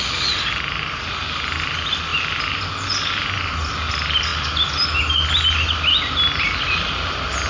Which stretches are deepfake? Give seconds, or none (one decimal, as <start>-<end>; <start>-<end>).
none